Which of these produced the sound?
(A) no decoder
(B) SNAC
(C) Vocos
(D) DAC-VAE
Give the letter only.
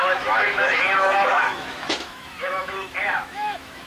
D